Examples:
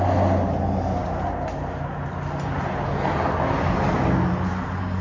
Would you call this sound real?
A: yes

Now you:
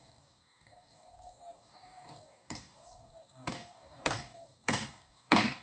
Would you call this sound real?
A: no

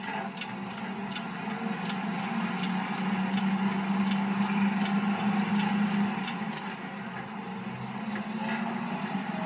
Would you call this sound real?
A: yes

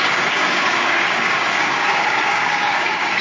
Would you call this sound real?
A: no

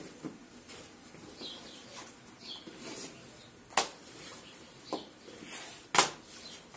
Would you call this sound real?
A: yes